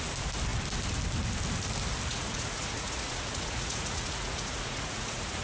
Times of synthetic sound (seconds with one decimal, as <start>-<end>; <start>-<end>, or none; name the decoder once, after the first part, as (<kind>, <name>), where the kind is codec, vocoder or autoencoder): 2.1-5.4 (vocoder, Vocos)